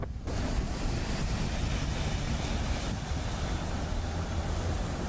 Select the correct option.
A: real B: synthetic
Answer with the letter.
A